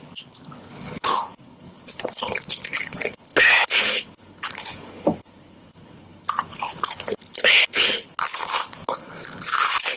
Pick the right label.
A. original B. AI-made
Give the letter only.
B